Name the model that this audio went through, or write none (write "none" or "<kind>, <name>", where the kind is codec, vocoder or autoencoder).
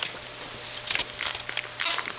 none